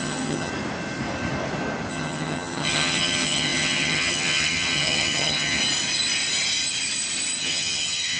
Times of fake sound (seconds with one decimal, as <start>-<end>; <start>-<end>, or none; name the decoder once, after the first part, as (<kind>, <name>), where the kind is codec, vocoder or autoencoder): 0.0-0.5 (vocoder, HiFi-GAN); 1.9-5.6; 7.4-8.2